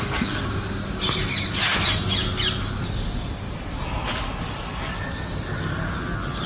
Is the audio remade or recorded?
recorded